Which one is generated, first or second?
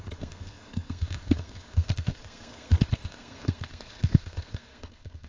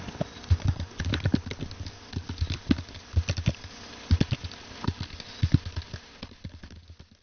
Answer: first